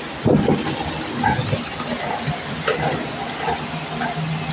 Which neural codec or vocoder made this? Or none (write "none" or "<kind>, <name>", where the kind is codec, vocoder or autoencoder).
none